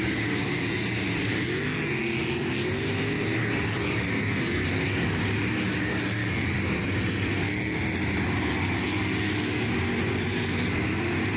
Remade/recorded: recorded